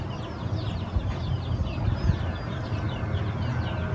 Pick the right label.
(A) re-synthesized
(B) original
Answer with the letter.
B